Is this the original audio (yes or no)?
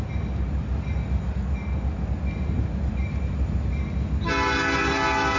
yes